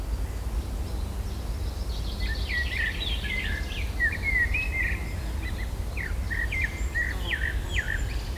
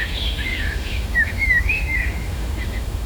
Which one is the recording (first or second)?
first